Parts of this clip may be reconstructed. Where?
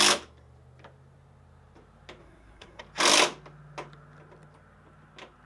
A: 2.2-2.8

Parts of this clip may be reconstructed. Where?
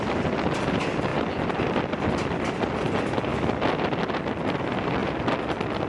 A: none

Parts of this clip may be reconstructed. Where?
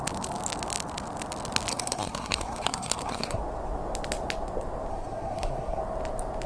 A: 1.7-3.4; 4.9-5.8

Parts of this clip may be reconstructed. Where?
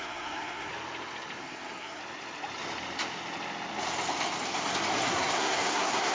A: 0.0-0.7; 1.4-2.0; 5.1-6.1